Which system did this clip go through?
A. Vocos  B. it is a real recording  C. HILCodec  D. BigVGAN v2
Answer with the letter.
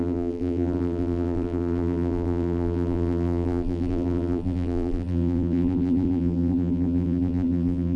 D